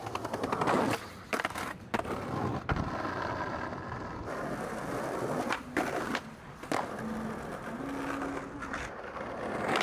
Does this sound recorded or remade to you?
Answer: recorded